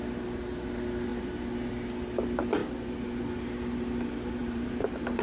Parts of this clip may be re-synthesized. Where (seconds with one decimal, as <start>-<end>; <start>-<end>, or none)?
4.4-5.2